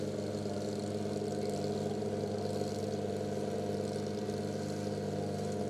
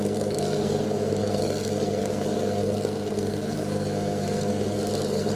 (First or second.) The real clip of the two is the first